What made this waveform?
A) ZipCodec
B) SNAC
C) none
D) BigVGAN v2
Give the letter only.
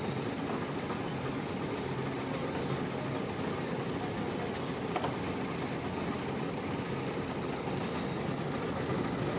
C